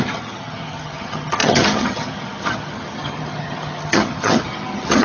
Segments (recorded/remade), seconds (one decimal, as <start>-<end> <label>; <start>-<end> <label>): 0.0-5.0 remade